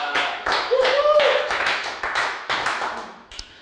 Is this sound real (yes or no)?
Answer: no